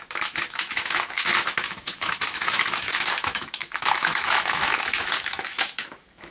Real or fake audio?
fake